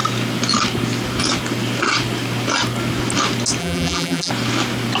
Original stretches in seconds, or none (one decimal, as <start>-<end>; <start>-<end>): 0.0-3.6; 4.3-5.0